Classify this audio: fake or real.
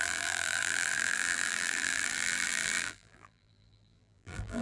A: fake